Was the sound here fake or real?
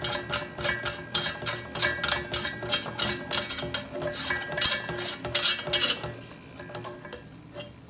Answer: real